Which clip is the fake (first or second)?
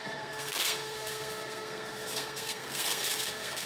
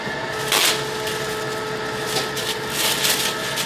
first